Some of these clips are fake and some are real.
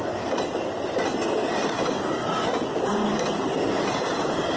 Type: real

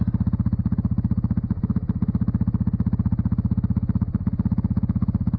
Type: real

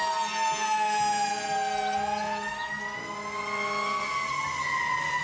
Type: real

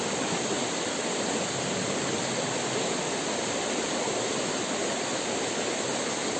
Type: real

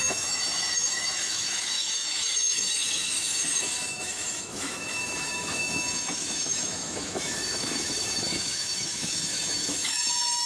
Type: fake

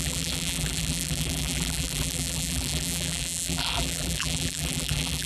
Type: fake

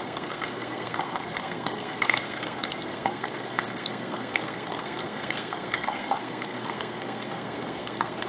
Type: fake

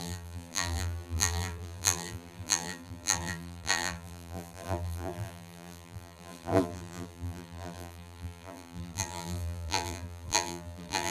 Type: fake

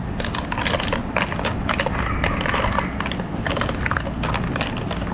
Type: real